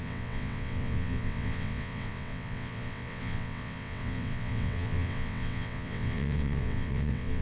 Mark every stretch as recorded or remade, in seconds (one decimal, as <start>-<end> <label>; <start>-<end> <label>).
0.0-7.4 remade